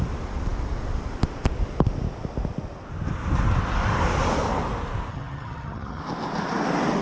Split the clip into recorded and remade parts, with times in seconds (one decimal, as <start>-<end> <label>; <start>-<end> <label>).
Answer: 0.0-5.1 recorded; 5.1-6.0 remade; 6.0-7.0 recorded